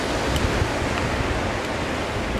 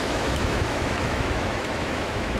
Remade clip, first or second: second